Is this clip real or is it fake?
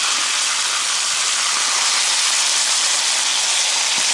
real